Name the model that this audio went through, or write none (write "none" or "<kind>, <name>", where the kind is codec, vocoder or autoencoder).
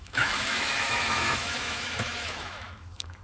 autoencoder, DAC-VAE